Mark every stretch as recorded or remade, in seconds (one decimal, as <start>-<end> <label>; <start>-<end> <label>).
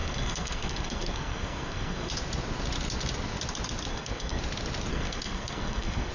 0.0-2.1 remade; 2.1-3.9 recorded; 3.9-4.4 remade; 4.4-4.9 recorded; 4.9-6.1 remade